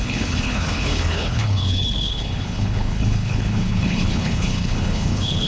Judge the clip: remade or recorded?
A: remade